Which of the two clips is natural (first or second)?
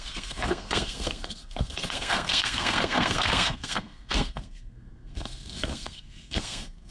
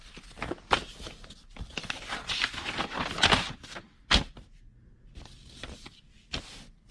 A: second